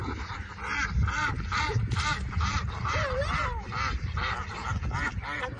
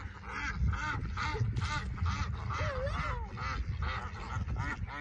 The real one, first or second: second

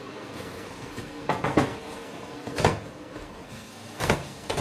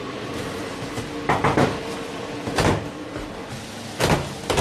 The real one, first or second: second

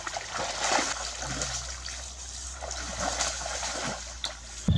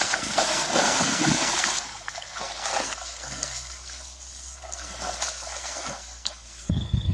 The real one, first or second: first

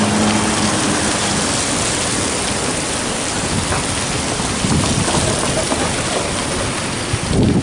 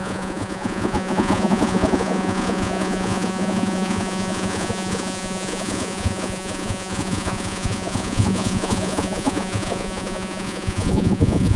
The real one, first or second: first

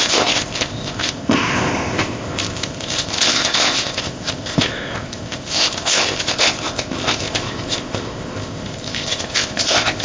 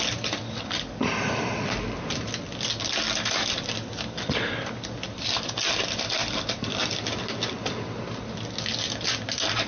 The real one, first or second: second